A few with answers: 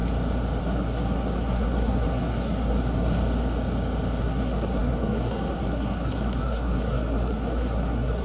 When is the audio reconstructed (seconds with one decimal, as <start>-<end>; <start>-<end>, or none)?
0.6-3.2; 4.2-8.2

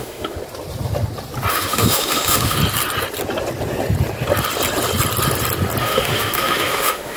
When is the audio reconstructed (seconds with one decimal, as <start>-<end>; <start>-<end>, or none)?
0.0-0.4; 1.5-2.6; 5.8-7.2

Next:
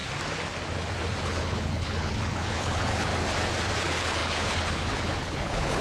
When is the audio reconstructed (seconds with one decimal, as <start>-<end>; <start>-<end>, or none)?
1.2-3.1; 3.8-5.8

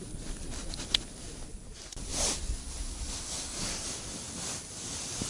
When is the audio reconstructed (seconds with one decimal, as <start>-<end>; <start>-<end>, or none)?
none